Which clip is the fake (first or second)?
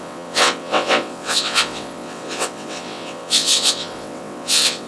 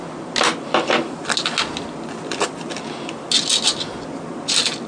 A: first